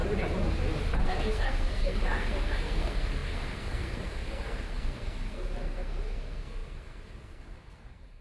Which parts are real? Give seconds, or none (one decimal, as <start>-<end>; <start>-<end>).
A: 0.0-1.0